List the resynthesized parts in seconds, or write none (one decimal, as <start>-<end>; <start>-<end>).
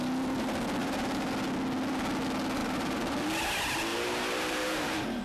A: 0.8-1.3; 2.6-3.2; 3.9-5.2